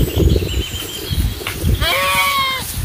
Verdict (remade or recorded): recorded